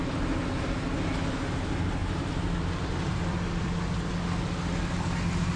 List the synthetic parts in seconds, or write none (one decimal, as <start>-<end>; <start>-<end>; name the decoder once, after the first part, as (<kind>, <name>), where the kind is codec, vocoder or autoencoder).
2.0-4.1 (vocoder, BigVGAN v2)